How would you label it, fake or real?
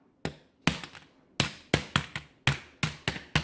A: real